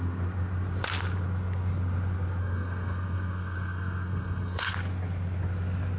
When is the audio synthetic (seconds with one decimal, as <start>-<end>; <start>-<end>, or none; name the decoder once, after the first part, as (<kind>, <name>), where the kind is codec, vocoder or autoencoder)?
2.4-4.7 (codec, SNAC)